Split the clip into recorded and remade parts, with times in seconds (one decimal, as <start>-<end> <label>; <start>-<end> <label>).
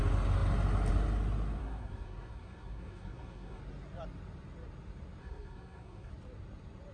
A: 0.0-1.6 recorded; 1.6-3.6 remade; 3.6-5.2 recorded; 5.2-6.1 remade; 6.1-6.9 recorded